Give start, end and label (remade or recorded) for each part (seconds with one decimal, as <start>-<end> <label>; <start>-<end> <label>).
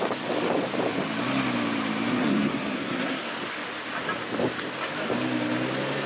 0.0-2.1 recorded; 2.1-3.3 remade; 3.3-6.1 recorded